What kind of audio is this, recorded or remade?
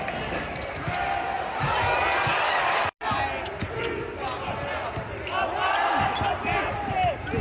recorded